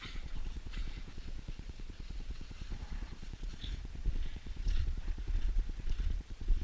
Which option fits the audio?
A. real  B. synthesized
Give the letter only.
B